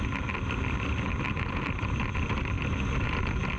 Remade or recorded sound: recorded